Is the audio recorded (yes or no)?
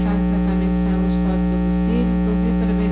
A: yes